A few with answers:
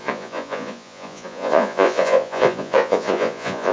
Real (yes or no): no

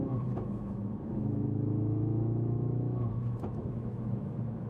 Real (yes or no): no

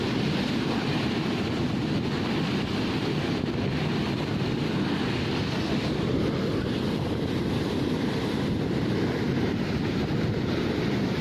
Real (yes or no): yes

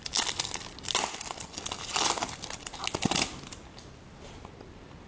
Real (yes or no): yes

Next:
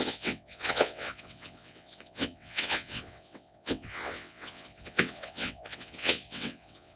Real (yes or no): no